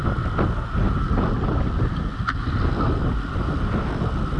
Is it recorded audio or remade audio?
recorded